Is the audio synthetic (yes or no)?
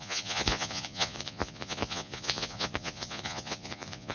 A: yes